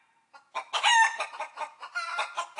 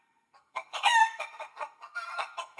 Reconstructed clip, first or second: second